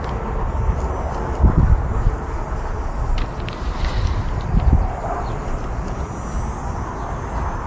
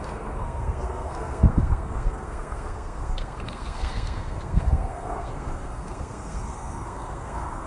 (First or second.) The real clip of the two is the first